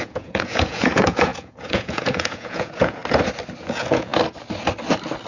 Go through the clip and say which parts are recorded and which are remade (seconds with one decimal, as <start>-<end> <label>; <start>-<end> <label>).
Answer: 0.0-3.0 remade; 3.0-3.6 recorded; 3.6-4.1 remade; 4.1-5.3 recorded